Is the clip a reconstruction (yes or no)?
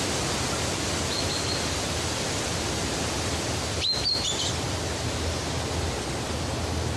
no